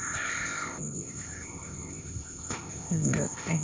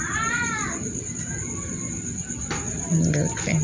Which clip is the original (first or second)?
second